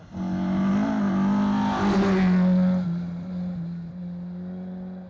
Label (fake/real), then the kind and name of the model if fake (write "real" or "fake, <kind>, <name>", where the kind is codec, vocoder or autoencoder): real